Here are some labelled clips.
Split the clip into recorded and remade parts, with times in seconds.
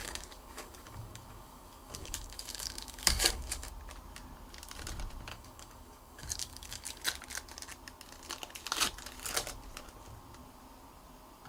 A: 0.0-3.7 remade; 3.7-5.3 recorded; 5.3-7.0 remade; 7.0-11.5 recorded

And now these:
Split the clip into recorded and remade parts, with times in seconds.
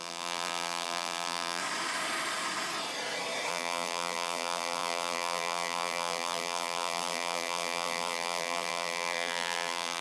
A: 0.0-1.6 remade; 1.6-3.5 recorded; 3.5-10.0 remade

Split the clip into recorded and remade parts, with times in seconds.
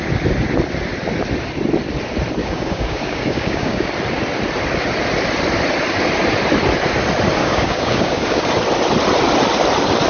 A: 0.0-2.4 recorded; 2.4-3.9 remade; 3.9-7.4 recorded; 7.4-8.5 remade; 8.5-10.1 recorded